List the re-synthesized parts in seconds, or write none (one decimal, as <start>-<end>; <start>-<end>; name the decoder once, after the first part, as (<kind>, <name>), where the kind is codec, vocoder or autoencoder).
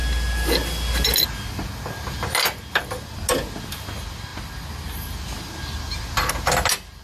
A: none